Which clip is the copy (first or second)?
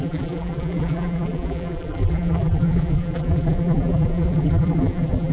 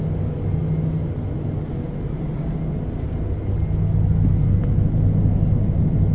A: first